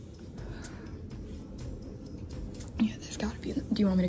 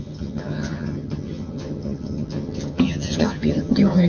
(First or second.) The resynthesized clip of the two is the second